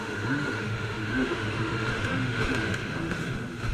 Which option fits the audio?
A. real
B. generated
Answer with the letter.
B